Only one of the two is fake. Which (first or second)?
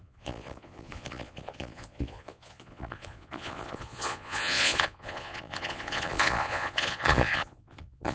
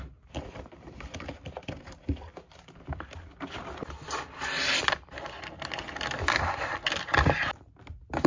first